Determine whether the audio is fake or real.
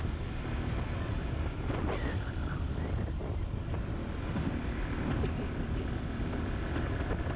fake